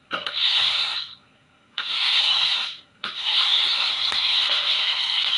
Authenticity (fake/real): fake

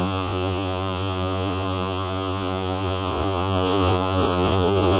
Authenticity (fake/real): fake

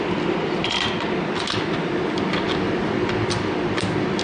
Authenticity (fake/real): real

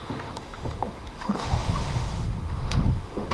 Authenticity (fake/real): fake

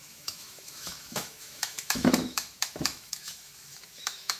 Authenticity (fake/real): fake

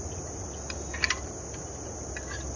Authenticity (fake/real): real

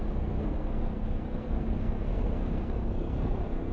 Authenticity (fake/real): fake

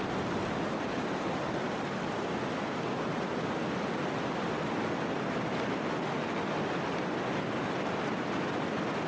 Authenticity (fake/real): real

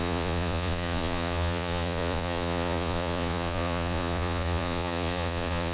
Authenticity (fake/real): fake